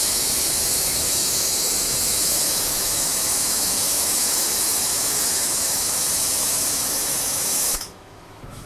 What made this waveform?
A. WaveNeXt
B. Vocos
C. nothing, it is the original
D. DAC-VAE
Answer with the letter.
D